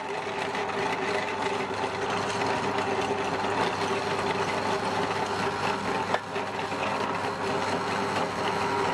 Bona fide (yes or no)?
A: yes